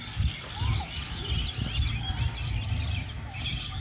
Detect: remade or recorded recorded